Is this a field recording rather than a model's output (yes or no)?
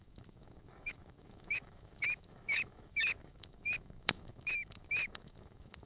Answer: no